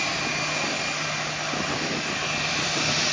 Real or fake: real